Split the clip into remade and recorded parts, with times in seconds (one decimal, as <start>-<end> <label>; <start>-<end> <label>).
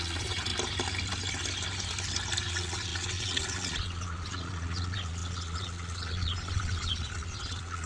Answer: 0.0-0.5 remade; 0.5-2.5 recorded; 2.5-7.9 remade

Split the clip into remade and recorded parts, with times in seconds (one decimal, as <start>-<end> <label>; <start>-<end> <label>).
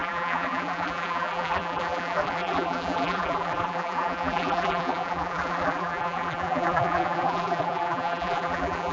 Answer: 0.0-8.9 remade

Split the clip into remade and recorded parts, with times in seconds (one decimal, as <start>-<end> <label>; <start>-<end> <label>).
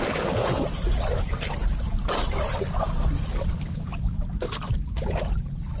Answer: 0.0-1.6 recorded; 1.6-2.5 remade; 2.5-5.8 recorded